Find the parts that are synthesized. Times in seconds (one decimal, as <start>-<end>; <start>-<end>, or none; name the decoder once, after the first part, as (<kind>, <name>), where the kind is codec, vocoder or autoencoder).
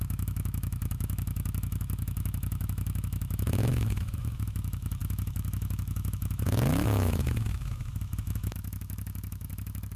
0.0-10.0 (autoencoder, DAC-VAE)